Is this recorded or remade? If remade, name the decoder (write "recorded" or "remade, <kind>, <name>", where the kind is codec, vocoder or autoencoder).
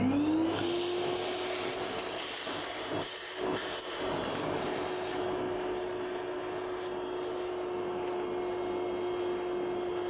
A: recorded